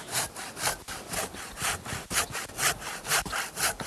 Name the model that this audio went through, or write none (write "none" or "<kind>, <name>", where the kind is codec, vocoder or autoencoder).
none